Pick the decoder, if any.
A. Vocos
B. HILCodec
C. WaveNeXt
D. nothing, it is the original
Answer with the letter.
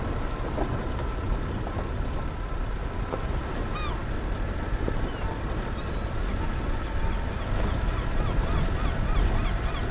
D